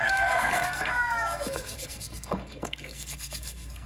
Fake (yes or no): yes